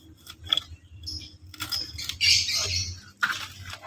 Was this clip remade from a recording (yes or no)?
no